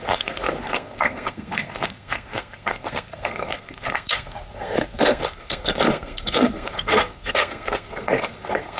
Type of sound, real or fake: fake